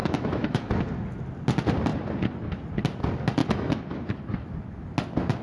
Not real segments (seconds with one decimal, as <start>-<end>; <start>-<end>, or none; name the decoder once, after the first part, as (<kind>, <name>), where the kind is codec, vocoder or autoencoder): 0.0-0.7 (autoencoder, DAC-VAE); 3.4-4.1

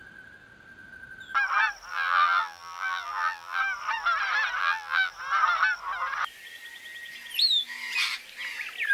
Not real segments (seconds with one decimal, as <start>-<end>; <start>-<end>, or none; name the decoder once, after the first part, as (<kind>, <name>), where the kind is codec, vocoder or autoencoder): 1.9-3.6 (vocoder, BigVGAN v2); 4.6-5.1

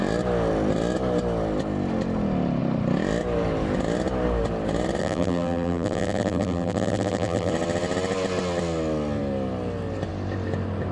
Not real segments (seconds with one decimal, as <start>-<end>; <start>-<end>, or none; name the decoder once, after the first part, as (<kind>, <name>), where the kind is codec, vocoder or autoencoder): 5.0-7.5 (vocoder, BigVGAN v2)

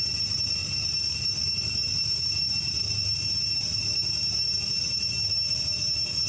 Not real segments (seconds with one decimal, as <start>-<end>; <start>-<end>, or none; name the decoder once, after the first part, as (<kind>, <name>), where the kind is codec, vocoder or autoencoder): none

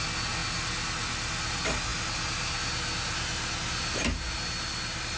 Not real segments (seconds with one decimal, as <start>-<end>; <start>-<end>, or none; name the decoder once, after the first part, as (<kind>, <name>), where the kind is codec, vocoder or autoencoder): none

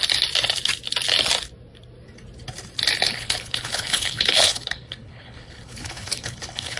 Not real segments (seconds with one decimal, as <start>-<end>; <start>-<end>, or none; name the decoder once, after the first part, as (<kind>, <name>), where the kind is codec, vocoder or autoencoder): 3.1-6.8 (codec, HILCodec)